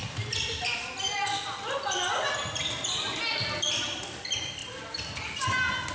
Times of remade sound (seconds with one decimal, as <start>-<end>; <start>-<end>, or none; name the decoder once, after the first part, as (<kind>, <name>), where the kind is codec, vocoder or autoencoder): 0.0-2.3 (vocoder, BigVGAN v2)